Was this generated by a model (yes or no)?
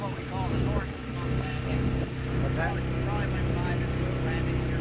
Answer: no